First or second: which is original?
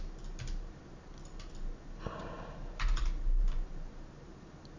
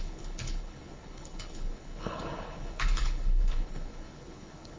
first